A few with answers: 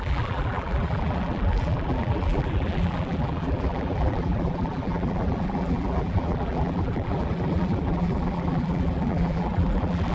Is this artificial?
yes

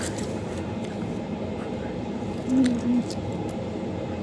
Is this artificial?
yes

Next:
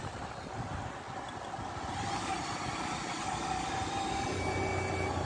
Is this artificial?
no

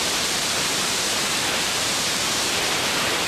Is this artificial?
yes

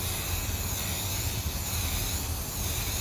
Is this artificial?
no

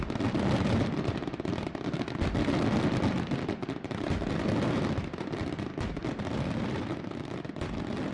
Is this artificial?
yes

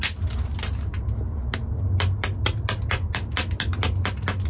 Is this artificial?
no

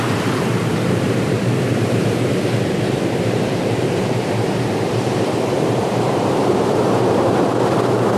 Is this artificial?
yes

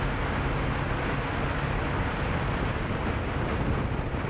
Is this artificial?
no